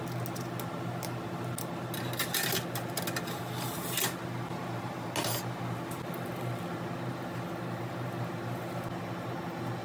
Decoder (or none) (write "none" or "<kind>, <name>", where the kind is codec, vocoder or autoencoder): none